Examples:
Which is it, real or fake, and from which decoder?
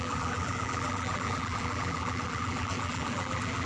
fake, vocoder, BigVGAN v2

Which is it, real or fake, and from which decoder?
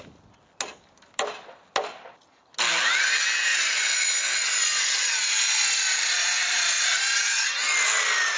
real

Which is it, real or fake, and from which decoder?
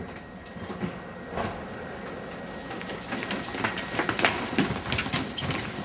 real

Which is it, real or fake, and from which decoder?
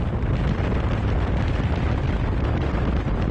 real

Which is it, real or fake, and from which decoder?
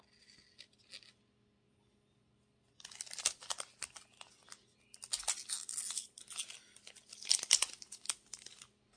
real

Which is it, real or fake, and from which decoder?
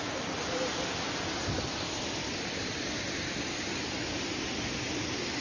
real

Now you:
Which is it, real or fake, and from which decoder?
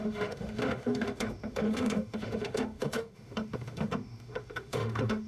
fake, autoencoder, DAC-VAE